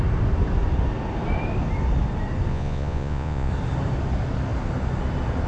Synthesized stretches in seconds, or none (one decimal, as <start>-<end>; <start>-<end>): 2.5-3.5